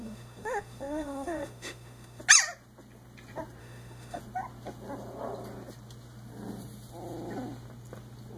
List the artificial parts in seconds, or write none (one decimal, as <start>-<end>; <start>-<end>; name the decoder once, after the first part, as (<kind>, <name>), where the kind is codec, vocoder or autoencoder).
0.0-2.2 (autoencoder, DAC-VAE); 3.6-4.2